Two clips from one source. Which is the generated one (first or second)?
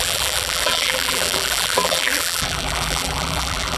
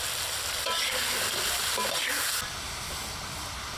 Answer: first